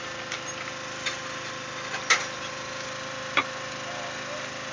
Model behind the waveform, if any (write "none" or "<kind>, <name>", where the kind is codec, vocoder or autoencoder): none